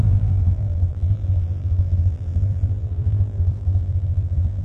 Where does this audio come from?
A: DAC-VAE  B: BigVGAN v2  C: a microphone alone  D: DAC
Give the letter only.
B